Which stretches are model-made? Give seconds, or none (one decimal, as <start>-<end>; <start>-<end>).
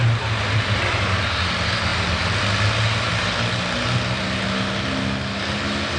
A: none